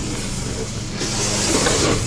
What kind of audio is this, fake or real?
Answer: real